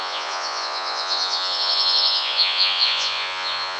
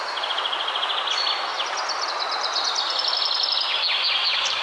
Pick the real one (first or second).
second